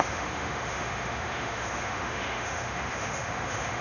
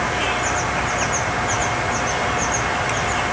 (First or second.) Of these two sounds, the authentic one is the second